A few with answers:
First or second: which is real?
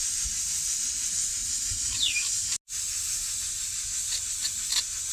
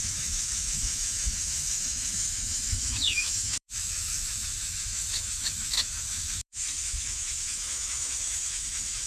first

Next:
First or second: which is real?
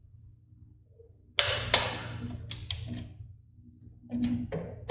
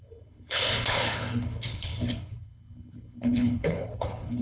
first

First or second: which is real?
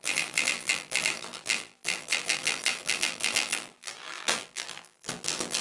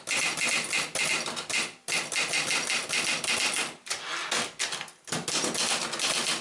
second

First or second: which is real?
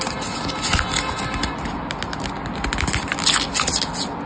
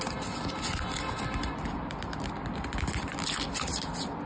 first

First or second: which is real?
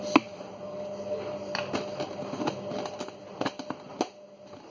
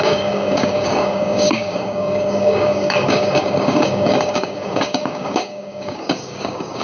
first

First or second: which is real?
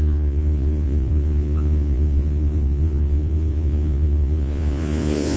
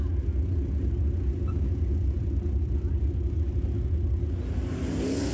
second